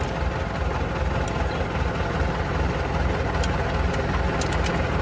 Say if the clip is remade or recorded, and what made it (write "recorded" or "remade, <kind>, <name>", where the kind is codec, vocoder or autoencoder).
recorded